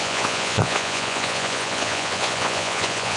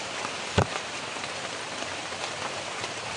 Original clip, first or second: second